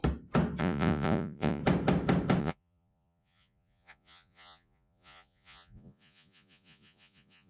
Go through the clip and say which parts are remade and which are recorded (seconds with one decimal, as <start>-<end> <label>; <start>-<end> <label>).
0.0-0.6 recorded; 0.6-1.6 remade; 1.6-2.4 recorded; 2.4-7.5 remade